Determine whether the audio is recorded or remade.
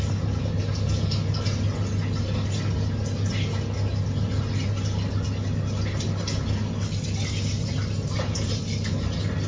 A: recorded